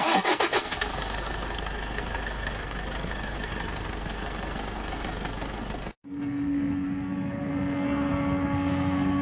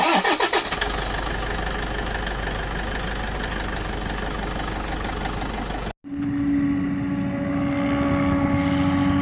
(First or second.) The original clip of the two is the second